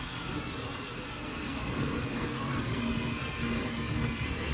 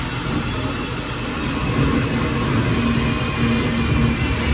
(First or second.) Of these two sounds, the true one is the second